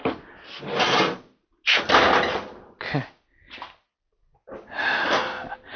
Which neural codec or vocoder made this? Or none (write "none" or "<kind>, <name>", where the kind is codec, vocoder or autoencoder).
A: none